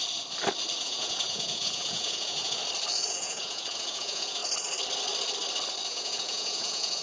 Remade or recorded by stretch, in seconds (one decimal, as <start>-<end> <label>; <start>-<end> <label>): 0.0-0.8 recorded; 0.8-2.6 remade; 2.6-3.1 recorded; 3.1-4.4 remade; 4.4-5.9 recorded; 5.9-7.0 remade